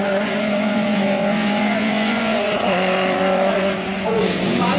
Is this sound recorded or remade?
remade